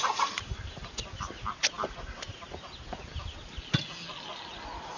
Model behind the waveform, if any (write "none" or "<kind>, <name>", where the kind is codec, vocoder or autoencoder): none